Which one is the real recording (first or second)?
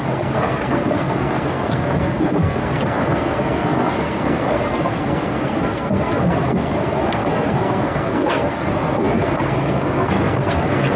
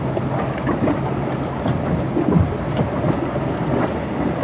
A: second